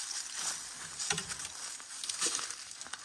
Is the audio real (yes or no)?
yes